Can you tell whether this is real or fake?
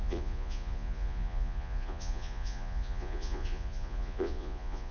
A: fake